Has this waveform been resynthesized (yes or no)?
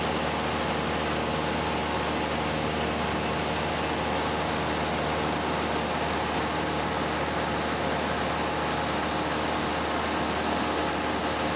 no